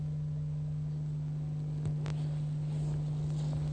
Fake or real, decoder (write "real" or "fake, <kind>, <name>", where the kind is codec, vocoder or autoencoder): real